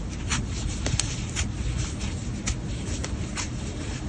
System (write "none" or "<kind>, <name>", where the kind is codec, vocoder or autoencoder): none